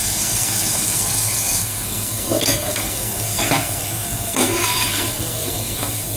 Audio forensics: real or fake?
fake